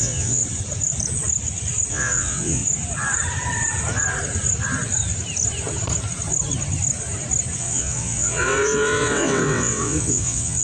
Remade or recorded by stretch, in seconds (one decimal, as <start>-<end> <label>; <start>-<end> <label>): 0.0-0.4 remade; 0.4-1.9 recorded; 1.9-2.6 remade; 2.6-7.6 recorded; 7.6-10.6 remade